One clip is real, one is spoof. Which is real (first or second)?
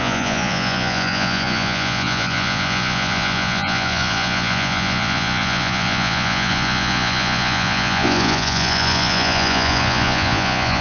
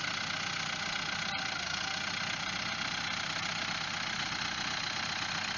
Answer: second